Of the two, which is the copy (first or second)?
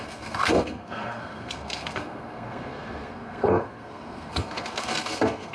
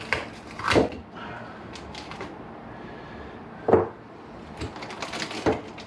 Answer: first